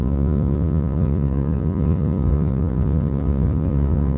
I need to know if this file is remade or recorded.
remade